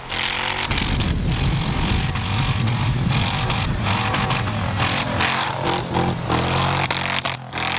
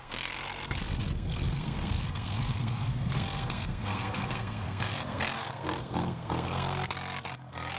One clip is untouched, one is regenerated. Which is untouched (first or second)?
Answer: first